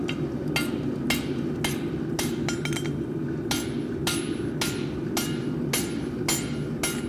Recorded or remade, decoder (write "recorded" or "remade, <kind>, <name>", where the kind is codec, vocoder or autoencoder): recorded